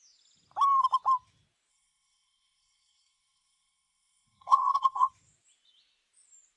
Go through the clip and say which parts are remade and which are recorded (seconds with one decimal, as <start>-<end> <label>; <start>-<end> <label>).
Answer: 0.0-1.7 recorded; 1.7-5.1 remade; 5.1-6.6 recorded